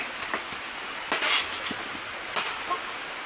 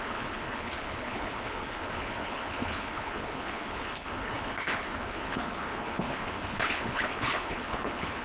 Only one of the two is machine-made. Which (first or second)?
second